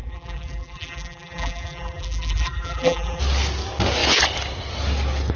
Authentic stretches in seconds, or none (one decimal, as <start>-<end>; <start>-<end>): 3.2-5.4

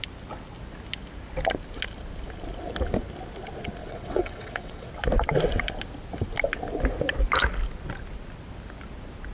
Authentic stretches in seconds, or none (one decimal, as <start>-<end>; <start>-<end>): 0.0-3.8; 4.9-9.3

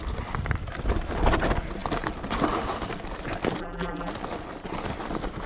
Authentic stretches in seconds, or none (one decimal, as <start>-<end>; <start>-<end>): 0.0-3.6; 4.1-5.5

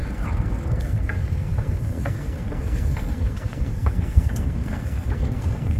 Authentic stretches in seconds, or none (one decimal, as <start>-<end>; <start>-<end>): none

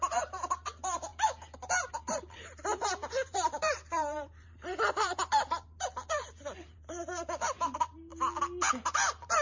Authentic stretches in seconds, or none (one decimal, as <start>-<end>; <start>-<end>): 8.1-8.7

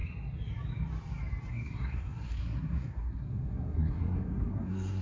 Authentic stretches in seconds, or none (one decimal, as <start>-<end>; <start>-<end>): 0.0-1.5

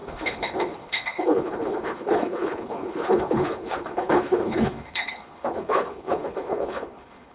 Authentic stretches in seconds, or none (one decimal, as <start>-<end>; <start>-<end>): none